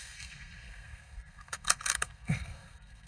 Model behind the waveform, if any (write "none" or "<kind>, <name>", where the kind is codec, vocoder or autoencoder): codec, SNAC